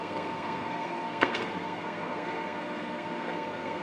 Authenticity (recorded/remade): remade